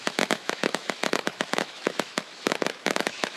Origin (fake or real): fake